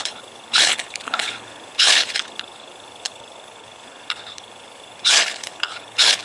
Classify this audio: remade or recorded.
remade